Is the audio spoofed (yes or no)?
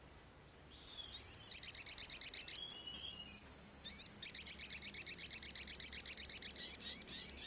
no